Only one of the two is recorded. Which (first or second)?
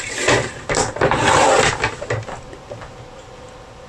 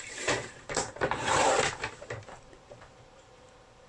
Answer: first